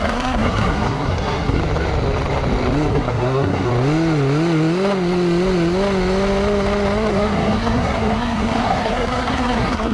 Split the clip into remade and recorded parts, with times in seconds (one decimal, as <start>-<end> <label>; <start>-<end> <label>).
0.0-1.6 remade; 1.6-2.9 recorded; 2.9-3.7 remade; 3.7-7.1 recorded; 7.1-9.9 remade